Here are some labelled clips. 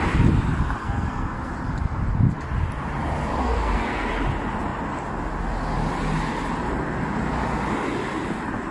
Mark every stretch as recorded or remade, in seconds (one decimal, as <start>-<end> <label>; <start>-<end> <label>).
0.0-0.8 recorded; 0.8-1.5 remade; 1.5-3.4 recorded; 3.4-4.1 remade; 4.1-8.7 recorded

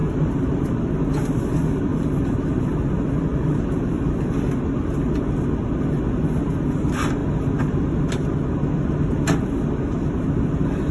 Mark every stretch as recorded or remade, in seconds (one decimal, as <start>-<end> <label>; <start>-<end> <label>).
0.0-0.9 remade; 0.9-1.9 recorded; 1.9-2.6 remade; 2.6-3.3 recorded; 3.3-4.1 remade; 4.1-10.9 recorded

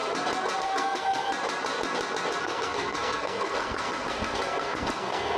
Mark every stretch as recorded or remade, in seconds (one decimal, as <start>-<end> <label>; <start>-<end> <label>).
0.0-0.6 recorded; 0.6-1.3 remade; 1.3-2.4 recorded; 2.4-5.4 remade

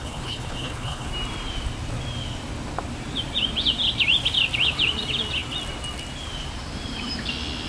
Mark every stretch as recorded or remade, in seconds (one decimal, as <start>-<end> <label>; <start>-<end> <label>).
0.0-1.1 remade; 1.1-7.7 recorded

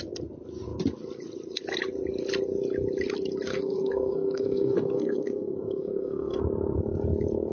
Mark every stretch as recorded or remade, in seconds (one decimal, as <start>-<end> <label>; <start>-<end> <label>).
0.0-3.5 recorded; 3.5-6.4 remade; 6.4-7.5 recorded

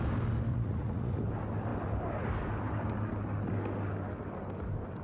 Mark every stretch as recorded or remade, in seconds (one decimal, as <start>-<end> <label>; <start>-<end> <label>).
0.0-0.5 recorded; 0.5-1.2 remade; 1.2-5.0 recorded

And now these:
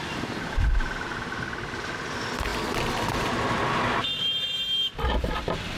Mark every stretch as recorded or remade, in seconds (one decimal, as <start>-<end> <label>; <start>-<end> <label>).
0.0-5.8 recorded